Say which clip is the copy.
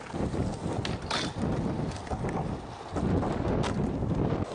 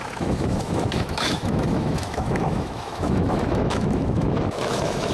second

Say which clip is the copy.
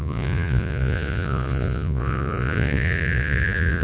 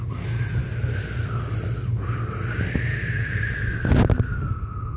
first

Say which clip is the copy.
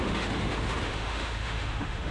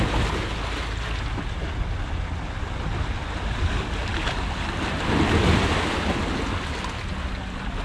first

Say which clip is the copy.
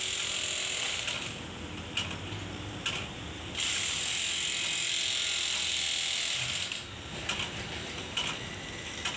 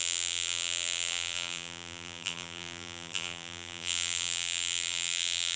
second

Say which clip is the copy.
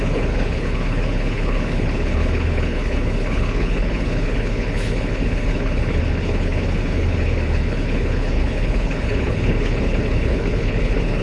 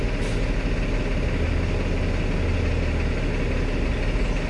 first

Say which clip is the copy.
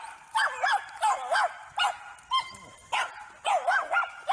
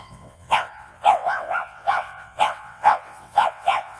second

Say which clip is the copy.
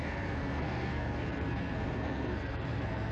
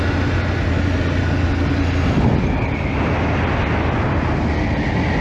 first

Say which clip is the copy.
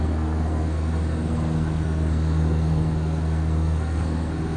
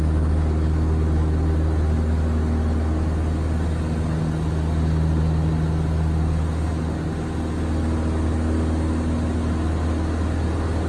first